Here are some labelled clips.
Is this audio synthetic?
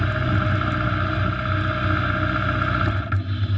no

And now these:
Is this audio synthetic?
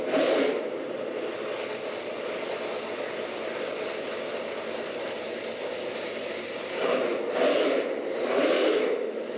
no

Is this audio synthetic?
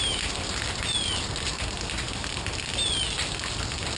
no